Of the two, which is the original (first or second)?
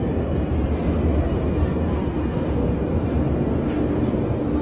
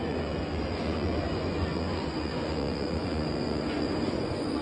first